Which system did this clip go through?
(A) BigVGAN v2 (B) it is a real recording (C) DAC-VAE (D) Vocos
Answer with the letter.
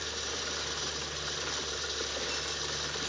A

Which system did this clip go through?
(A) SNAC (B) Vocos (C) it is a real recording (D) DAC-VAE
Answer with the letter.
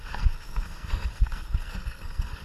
A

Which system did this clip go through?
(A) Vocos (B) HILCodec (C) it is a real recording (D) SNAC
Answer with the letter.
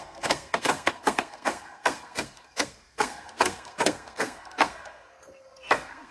D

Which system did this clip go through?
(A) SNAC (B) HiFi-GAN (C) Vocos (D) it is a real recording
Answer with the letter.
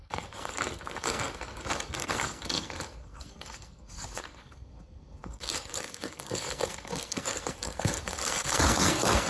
A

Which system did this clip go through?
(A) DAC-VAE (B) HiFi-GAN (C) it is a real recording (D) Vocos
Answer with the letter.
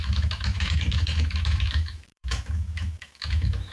A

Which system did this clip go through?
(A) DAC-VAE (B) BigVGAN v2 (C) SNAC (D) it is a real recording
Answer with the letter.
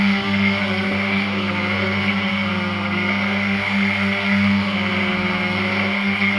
C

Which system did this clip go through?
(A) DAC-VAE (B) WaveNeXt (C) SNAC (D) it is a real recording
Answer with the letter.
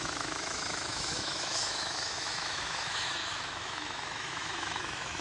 A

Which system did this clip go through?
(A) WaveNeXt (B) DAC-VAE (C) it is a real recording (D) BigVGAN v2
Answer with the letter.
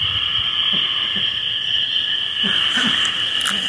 C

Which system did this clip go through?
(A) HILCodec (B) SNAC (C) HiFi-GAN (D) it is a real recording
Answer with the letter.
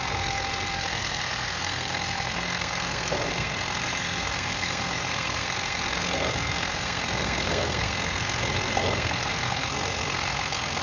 B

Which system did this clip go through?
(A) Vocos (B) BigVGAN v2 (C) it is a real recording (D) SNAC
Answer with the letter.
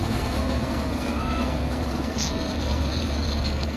D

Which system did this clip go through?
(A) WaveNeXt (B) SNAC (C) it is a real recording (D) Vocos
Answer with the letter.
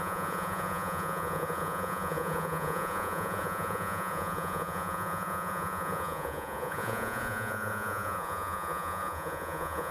D